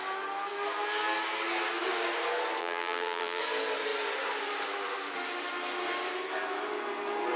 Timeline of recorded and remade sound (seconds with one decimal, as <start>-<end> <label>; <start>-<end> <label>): 0.0-2.6 recorded; 2.6-3.4 remade; 3.4-7.4 recorded